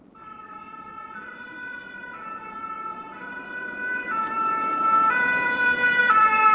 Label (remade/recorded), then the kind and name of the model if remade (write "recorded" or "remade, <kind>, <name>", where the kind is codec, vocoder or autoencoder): remade, vocoder, BigVGAN v2